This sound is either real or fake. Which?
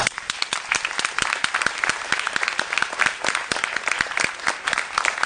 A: real